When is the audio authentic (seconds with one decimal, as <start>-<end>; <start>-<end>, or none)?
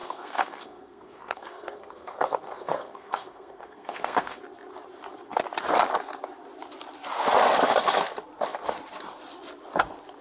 4.4-10.2